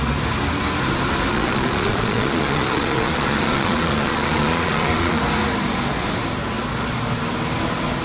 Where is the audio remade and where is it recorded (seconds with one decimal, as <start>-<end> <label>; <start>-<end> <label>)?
0.0-1.3 recorded; 1.3-5.2 remade; 5.2-8.0 recorded